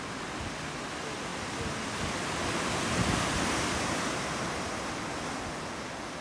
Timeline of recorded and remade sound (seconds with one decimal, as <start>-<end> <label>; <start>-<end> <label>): 0.0-6.2 recorded